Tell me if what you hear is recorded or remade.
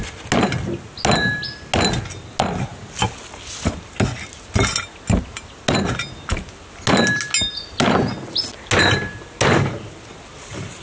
recorded